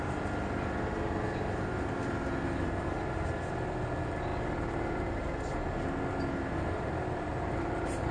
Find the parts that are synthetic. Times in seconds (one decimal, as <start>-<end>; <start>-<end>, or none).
none